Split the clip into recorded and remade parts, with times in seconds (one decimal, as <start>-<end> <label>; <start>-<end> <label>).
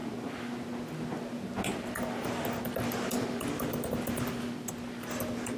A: 0.0-5.6 recorded